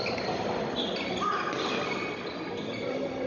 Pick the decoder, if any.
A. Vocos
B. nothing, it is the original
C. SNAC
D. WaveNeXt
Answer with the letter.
B